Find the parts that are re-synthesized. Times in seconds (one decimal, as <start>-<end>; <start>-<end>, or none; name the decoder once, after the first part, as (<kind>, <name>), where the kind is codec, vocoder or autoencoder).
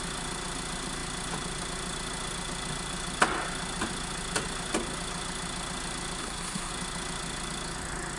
6.2-6.7 (codec, SNAC)